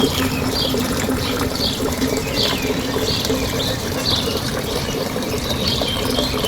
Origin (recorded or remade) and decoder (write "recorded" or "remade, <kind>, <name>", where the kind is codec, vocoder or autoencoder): remade, vocoder, BigVGAN v2